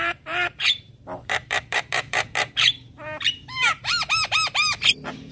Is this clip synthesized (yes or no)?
yes